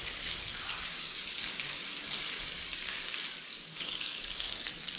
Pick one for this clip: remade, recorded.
remade